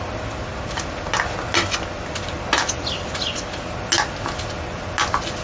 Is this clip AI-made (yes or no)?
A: no